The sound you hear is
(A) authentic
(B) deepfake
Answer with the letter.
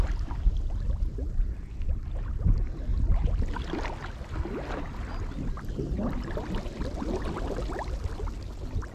A